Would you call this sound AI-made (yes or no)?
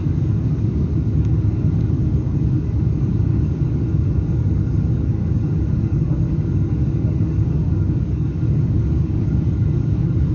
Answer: yes